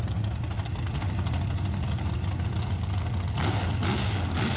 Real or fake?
real